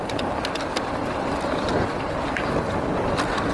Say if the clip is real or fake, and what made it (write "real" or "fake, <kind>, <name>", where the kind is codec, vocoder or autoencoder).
real